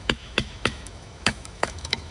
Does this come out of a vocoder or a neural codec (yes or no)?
yes